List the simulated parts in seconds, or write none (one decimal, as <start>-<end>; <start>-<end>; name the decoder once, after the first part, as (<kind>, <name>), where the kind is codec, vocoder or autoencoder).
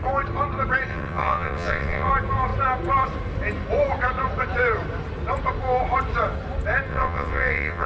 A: 0.9-2.1 (vocoder, WaveNeXt); 6.9-7.9